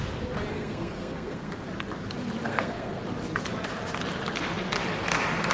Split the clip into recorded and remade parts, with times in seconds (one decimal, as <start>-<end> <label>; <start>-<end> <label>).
0.0-0.5 recorded; 0.5-1.5 remade; 1.5-2.4 recorded; 2.4-3.0 remade; 3.0-5.5 recorded